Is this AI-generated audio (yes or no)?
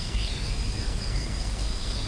yes